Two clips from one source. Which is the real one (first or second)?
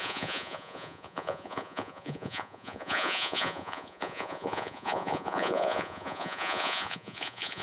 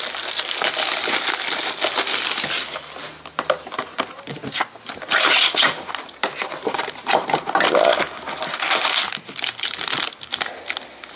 second